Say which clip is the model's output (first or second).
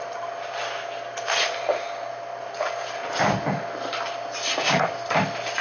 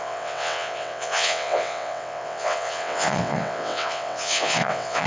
second